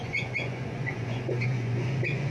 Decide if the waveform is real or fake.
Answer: fake